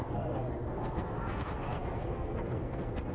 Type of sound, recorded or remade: remade